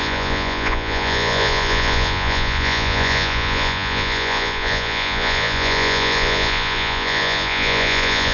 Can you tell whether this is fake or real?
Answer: fake